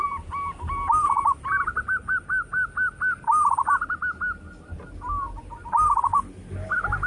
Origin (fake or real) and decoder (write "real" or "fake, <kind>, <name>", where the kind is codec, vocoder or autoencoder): real